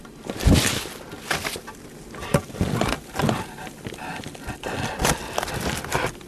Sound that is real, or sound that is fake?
real